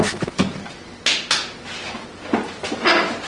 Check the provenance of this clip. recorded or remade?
recorded